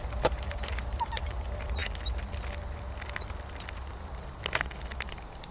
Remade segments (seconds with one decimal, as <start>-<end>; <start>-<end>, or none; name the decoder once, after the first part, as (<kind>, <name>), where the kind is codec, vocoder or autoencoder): 0.0-1.8 (vocoder, BigVGAN v2); 5.1-5.5